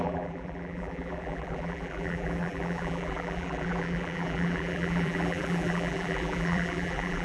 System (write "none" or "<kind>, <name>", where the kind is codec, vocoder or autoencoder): vocoder, BigVGAN v2